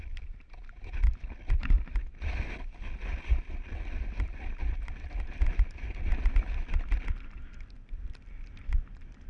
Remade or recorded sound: recorded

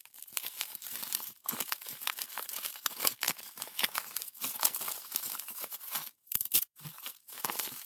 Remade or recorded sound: remade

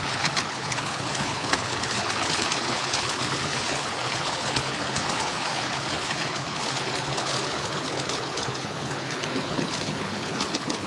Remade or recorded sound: remade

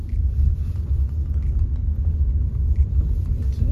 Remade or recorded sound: recorded